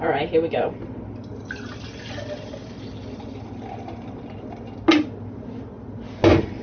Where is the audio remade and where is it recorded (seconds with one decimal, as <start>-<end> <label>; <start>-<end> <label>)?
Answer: 0.0-6.6 recorded